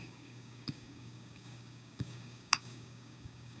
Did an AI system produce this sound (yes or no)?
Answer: yes